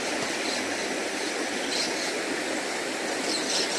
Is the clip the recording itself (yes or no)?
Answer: yes